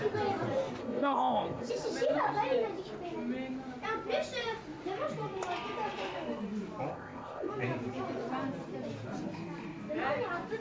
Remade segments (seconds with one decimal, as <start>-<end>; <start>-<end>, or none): 0.8-1.7; 6.9-7.5